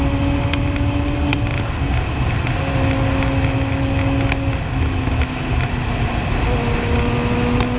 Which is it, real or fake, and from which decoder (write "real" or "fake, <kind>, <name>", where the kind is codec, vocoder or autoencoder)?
real